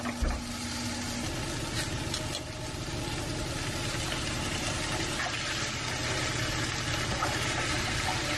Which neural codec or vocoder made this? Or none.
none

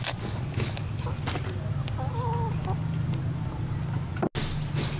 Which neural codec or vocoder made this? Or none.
none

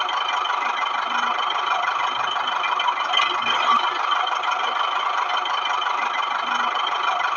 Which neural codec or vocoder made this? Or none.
none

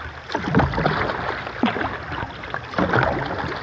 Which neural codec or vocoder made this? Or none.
none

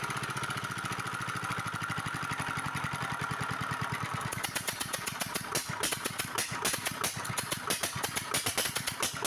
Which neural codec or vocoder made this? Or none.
none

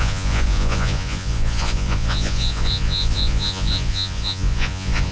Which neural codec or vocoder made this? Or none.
vocoder, Vocos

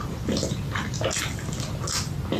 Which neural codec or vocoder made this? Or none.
none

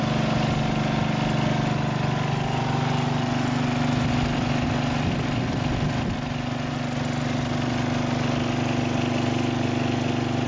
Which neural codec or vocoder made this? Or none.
none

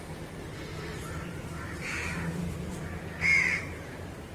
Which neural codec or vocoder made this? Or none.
vocoder, BigVGAN v2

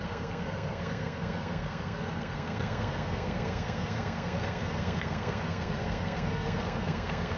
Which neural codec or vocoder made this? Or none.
codec, SNAC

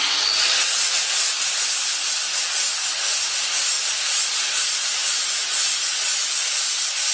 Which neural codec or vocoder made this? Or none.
none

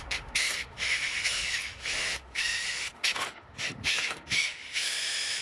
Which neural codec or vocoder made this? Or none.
autoencoder, DAC-VAE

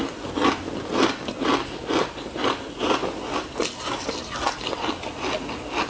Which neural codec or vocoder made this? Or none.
none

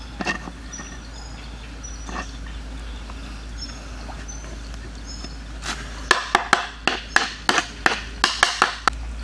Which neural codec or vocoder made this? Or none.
none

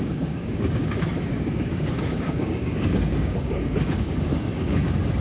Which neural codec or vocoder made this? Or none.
codec, DAC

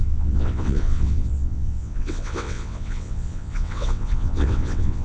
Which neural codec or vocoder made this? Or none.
vocoder, WaveNeXt